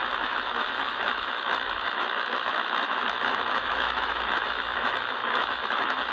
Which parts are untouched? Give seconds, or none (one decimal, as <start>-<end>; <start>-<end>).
none